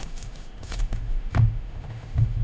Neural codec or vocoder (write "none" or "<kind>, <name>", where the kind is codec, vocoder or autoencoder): autoencoder, DAC-VAE